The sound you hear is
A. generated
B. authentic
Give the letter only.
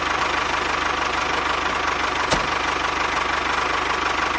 B